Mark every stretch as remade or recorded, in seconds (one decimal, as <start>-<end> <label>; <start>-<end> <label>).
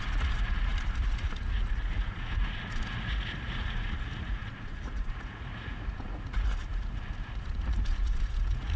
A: 0.0-8.8 remade